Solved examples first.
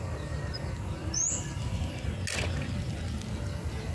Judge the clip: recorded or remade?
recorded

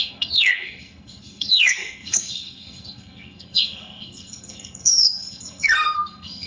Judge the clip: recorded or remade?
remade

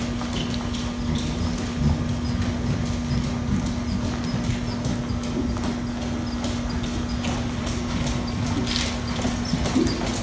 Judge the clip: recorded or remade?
recorded